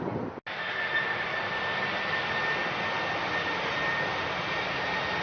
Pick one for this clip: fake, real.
real